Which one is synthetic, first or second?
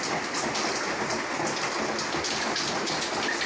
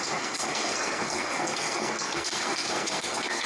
second